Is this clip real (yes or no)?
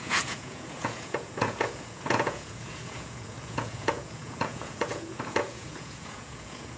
no